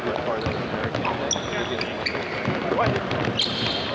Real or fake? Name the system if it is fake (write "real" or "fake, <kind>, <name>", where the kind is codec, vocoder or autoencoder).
real